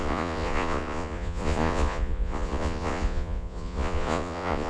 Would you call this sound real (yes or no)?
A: no